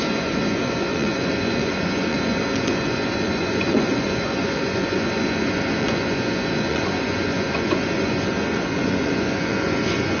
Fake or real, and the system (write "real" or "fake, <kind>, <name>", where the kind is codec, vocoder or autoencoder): fake, vocoder, Vocos